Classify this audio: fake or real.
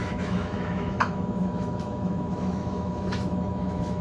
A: fake